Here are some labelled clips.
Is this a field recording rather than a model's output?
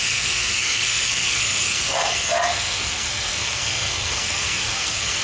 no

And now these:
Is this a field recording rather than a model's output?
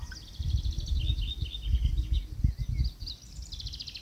yes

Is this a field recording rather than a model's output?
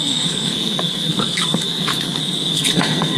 no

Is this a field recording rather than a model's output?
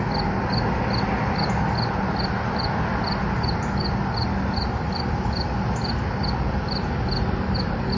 yes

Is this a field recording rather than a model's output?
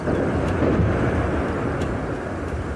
yes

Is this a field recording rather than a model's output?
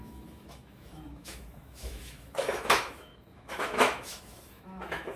no